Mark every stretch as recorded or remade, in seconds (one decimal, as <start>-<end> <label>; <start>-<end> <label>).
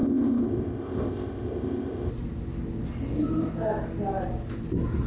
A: 0.0-2.1 remade; 2.1-5.1 recorded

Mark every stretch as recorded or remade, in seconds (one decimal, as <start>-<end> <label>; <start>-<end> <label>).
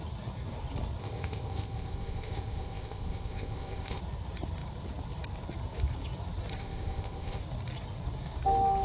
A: 0.0-1.0 recorded; 1.0-4.0 remade; 4.0-6.5 recorded; 6.5-7.4 remade; 7.4-8.8 recorded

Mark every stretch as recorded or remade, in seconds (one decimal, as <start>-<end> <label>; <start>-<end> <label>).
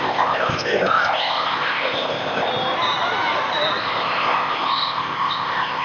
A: 0.0-2.5 remade; 2.5-3.8 recorded; 3.8-5.8 remade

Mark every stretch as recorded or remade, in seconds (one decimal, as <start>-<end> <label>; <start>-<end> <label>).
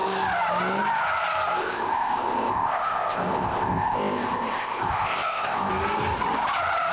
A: 0.0-1.6 recorded; 1.6-5.7 remade; 5.7-6.9 recorded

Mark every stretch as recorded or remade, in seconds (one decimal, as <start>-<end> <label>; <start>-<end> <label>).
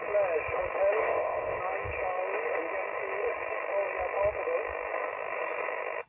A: 0.0-1.0 recorded; 1.0-1.6 remade; 1.6-6.1 recorded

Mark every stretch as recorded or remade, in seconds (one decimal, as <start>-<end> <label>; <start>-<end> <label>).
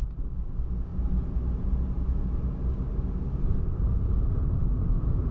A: 0.0-5.3 recorded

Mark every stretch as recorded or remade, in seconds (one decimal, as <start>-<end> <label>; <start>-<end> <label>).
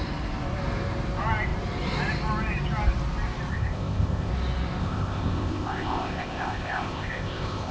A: 0.0-3.5 recorded; 3.5-4.3 remade; 4.3-4.8 recorded; 4.8-7.7 remade